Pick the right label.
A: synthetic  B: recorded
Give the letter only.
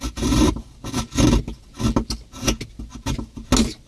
B